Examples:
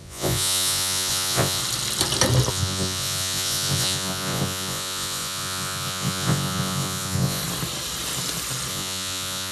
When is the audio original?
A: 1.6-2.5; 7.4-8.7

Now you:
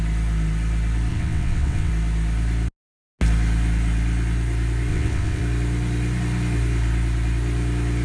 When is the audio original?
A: 0.0-1.1; 1.9-4.9; 5.4-8.0

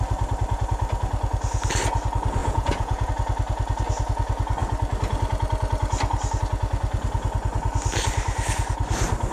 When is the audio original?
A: 0.0-2.4; 3.1-9.3

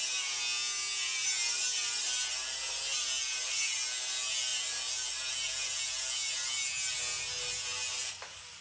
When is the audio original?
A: 0.0-8.6

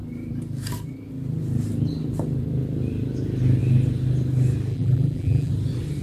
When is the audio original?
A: 0.0-4.7; 5.5-6.0

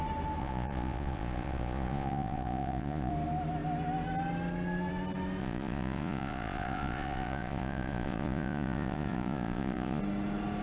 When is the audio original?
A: 0.0-0.4; 3.1-5.4; 10.0-10.6